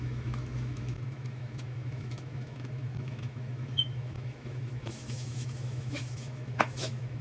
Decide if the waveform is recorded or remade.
remade